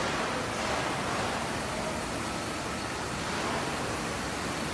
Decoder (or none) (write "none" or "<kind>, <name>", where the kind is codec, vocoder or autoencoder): none